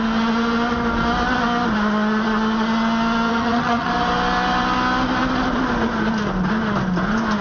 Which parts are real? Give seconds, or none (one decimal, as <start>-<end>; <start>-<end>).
0.0-3.3; 3.9-7.4